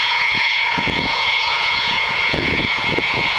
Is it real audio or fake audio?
fake